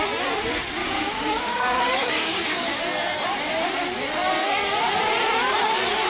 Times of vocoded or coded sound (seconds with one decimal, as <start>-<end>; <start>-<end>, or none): 0.8-2.8